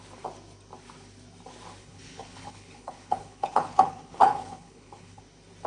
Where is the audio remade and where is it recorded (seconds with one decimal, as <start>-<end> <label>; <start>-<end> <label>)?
0.0-1.8 recorded; 1.8-5.2 remade; 5.2-5.7 recorded